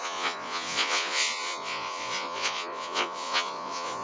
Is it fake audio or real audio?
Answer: fake